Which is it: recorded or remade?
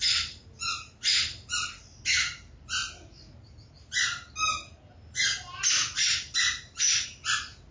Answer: recorded